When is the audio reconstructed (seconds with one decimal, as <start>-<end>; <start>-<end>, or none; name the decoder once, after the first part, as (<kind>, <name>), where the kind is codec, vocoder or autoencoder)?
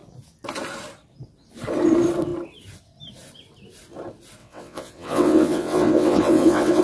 4.4-6.8 (vocoder, WaveNeXt)